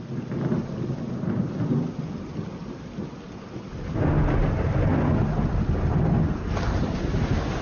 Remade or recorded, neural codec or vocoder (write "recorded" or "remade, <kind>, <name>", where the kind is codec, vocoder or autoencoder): recorded